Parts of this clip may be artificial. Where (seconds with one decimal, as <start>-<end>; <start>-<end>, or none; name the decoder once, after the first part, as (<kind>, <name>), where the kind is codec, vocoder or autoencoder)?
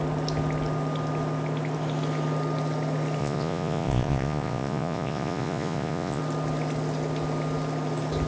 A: 3.2-6.2 (vocoder, Vocos)